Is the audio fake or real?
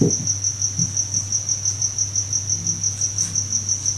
real